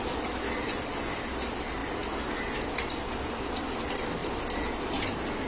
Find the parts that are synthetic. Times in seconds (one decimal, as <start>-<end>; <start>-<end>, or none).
none